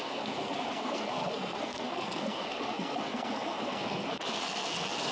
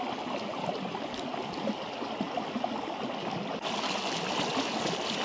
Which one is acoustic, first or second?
second